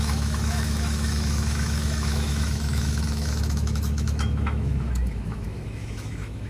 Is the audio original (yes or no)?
no